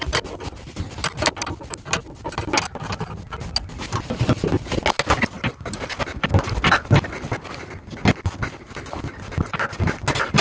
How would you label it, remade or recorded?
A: recorded